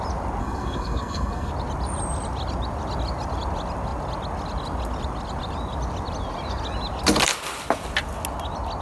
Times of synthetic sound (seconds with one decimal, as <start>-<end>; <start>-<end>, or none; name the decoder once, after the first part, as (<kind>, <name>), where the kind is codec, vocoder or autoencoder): 0.4-1.5 (codec, SNAC)